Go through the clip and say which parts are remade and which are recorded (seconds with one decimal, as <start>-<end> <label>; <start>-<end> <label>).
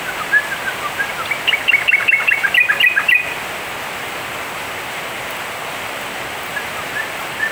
0.0-7.5 recorded